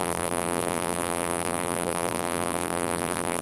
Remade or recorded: remade